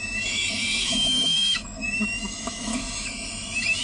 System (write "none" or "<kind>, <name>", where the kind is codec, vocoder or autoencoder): autoencoder, DAC-VAE